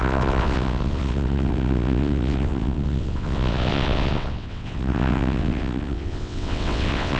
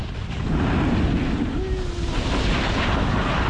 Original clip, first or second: second